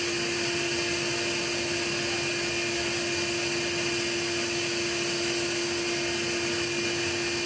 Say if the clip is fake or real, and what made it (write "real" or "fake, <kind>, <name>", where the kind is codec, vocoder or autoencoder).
real